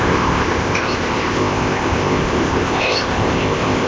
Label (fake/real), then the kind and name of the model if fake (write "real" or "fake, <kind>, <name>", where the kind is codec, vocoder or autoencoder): fake, codec, ZipCodec